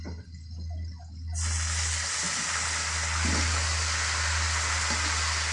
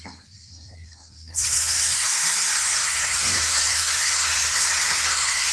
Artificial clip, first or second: second